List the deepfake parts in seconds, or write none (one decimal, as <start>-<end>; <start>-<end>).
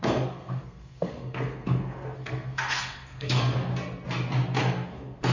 0.0-3.7; 4.6-5.3